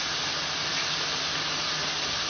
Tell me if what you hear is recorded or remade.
recorded